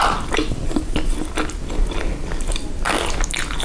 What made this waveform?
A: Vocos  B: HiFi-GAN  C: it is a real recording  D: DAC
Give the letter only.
C